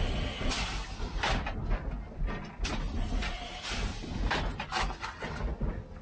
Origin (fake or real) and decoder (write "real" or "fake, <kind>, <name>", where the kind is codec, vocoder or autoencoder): real